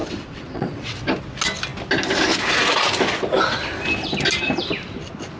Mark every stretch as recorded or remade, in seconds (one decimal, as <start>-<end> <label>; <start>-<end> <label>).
0.0-1.0 remade; 1.0-5.4 recorded